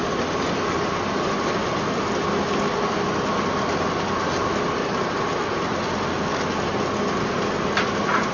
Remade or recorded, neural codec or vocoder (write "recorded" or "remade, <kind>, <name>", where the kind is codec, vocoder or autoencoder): recorded